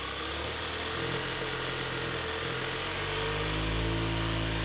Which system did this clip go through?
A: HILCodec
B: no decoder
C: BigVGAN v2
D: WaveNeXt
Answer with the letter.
B